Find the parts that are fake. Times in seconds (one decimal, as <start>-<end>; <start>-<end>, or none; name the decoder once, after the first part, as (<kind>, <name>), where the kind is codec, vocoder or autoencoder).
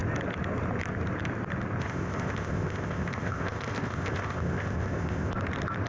1.8-5.3 (codec, ZipCodec)